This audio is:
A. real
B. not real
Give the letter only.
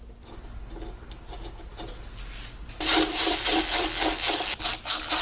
A